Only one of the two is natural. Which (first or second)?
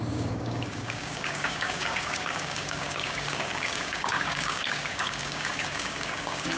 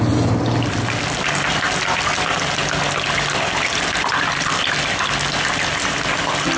second